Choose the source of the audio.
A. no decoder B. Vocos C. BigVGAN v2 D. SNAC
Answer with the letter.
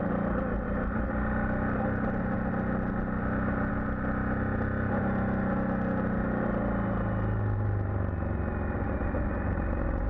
A